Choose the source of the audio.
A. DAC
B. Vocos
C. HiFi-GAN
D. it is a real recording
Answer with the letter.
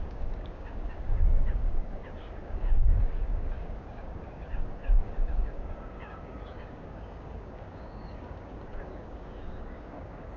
A